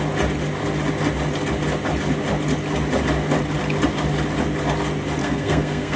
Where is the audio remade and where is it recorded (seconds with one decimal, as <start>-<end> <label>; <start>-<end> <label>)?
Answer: 0.0-5.2 recorded; 5.2-6.0 remade

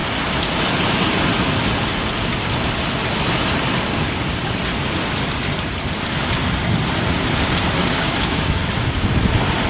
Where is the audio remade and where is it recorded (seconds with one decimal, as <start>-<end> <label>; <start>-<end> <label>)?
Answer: 0.0-7.8 recorded; 7.8-8.6 remade; 8.6-9.7 recorded

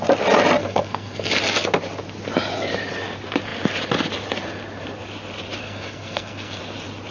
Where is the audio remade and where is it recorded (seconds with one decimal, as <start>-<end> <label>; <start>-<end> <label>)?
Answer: 0.0-0.6 recorded; 0.6-1.3 remade; 1.3-5.6 recorded; 5.6-6.6 remade; 6.6-7.1 recorded